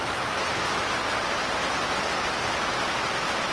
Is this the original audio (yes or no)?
yes